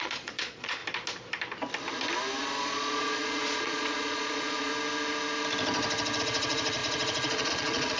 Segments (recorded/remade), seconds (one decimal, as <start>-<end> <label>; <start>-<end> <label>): 0.0-0.8 remade; 0.8-2.4 recorded; 2.4-4.7 remade; 4.7-6.2 recorded; 6.2-8.0 remade